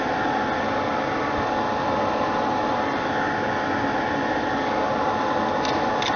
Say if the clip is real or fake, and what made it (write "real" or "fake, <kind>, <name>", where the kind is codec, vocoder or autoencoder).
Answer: real